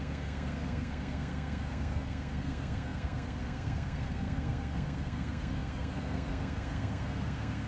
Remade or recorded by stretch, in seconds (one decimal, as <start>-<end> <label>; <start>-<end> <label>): 0.0-7.7 remade